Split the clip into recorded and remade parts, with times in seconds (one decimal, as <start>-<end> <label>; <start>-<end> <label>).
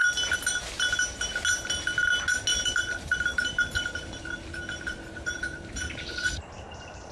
0.0-2.5 recorded; 2.5-7.1 remade